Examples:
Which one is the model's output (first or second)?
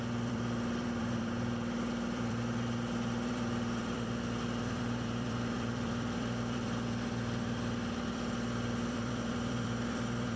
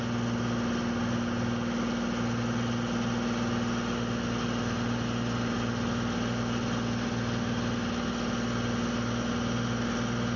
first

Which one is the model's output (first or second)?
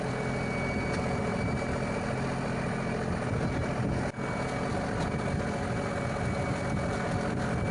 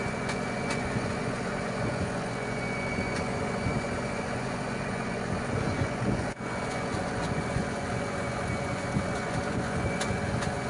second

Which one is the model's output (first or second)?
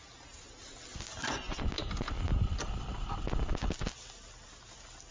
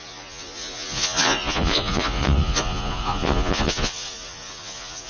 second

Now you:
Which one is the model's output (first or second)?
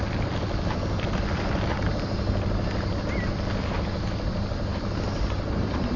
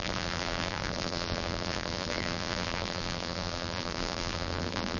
second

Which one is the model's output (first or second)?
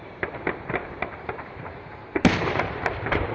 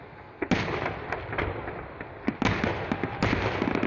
first